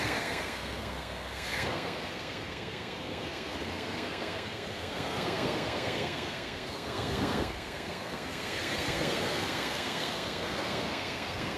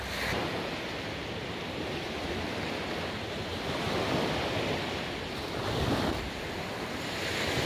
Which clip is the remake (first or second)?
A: first